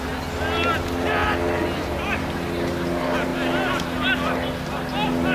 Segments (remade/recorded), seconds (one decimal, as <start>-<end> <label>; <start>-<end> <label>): 0.0-5.3 recorded